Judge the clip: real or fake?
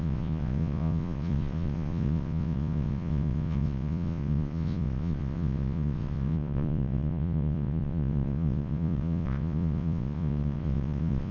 fake